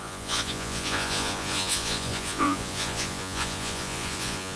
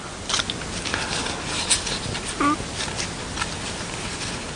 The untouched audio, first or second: second